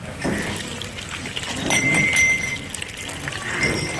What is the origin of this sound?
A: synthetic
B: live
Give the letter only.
B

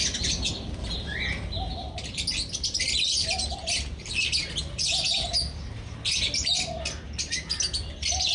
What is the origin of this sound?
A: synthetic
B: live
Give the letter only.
B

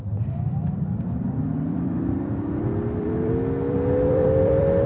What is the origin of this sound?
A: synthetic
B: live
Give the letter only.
A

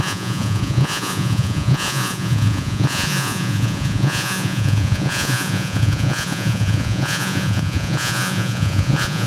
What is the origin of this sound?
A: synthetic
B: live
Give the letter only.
A